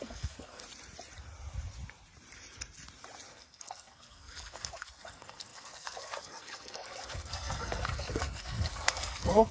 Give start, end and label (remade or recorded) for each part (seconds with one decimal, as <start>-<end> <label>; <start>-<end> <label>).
0.0-0.6 remade; 0.6-3.3 recorded; 3.3-9.5 remade